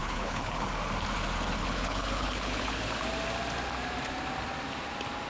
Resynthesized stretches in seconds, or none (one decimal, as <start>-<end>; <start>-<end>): 0.0-0.7; 1.6-3.0